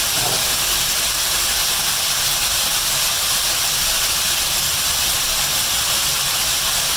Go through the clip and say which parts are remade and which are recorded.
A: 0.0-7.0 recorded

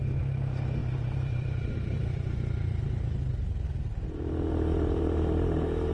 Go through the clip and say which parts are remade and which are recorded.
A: 0.0-0.8 recorded; 0.8-2.8 remade; 2.8-3.7 recorded; 3.7-5.9 remade